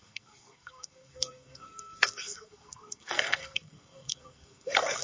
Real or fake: fake